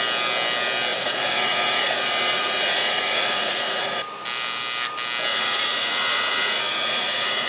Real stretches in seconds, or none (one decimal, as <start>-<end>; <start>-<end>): 0.0-0.9; 4.0-5.3